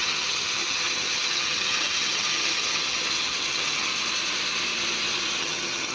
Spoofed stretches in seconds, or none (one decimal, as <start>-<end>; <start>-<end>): 0.0-3.9; 5.4-5.9